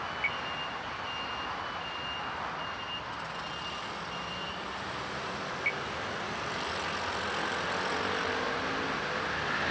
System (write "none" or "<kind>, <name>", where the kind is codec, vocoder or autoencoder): none